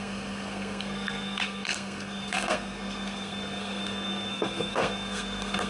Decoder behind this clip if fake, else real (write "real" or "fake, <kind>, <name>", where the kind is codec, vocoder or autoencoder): fake, codec, SNAC